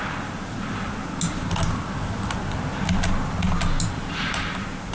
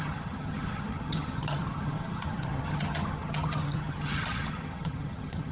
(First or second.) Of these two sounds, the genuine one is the first